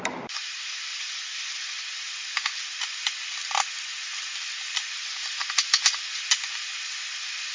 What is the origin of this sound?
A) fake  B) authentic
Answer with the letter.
B